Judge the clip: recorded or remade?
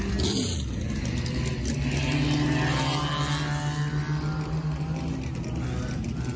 recorded